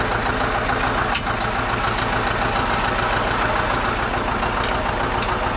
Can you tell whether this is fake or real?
real